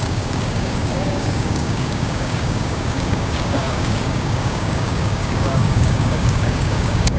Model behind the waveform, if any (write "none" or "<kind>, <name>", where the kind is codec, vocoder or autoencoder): codec, DAC